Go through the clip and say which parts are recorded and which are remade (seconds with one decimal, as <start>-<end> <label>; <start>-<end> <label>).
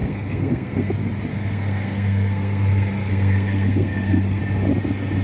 0.0-0.9 remade; 0.9-1.3 recorded; 1.3-4.4 remade; 4.4-5.2 recorded